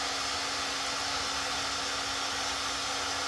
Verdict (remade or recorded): recorded